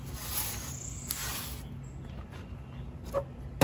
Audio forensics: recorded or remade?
recorded